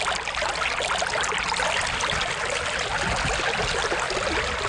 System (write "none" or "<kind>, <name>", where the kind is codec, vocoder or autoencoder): none